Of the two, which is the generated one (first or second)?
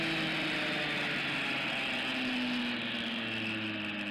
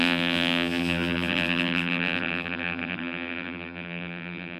second